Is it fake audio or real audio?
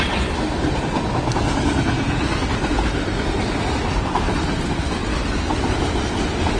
real